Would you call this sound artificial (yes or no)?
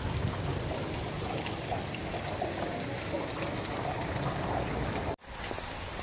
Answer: no